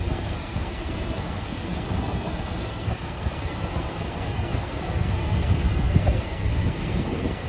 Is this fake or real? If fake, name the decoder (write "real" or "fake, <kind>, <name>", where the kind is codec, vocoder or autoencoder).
fake, codec, SNAC